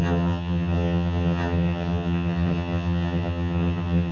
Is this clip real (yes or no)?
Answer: no